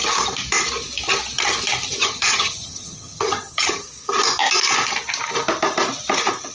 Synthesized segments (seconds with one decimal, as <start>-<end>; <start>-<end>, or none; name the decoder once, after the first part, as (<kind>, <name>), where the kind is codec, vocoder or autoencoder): 2.0-3.8 (vocoder, HiFi-GAN)